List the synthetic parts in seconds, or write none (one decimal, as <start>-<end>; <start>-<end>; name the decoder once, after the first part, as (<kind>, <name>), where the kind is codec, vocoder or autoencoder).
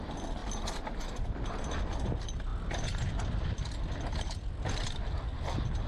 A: none